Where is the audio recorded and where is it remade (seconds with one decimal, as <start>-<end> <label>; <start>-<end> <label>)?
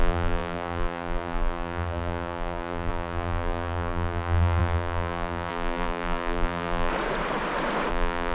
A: 0.0-6.9 remade; 6.9-7.9 recorded; 7.9-8.3 remade